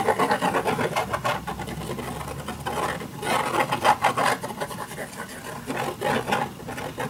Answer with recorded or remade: recorded